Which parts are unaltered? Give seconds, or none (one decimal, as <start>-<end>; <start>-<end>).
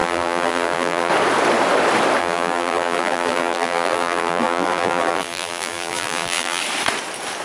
1.1-2.2; 6.6-7.4